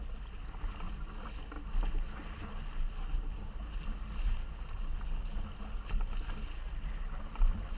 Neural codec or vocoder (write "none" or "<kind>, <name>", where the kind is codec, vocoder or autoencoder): none